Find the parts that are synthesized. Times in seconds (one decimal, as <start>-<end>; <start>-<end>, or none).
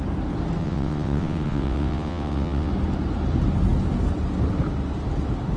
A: 0.6-2.7